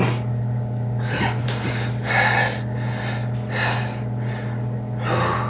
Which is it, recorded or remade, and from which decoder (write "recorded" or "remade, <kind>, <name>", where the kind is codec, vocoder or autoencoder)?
recorded